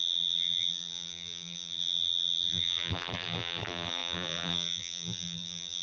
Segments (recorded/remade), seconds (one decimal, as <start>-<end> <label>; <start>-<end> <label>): 0.0-5.8 remade